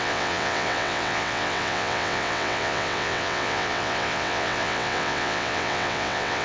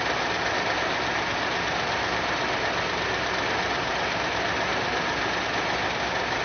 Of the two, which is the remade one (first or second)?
first